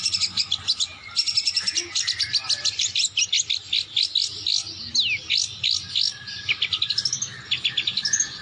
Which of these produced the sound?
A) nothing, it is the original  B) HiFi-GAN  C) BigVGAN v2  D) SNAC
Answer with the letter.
A